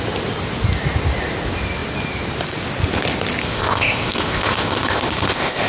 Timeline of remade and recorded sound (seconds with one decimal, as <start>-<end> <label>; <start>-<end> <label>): 0.0-3.4 recorded; 3.4-5.7 remade